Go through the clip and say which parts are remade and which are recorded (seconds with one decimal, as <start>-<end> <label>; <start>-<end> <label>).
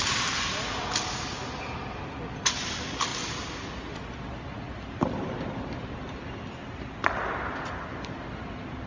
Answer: 0.0-8.9 recorded